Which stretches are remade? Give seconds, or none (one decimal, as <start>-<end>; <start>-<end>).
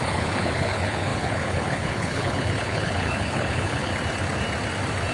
0.0-3.9